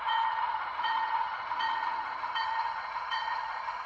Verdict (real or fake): fake